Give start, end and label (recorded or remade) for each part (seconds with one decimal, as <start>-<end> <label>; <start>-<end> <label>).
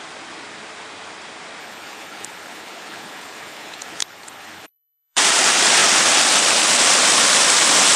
0.0-1.6 recorded; 1.6-5.2 remade; 5.2-8.0 recorded